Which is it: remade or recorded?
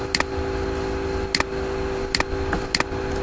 recorded